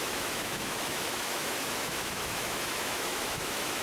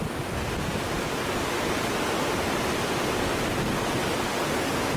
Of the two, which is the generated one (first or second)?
first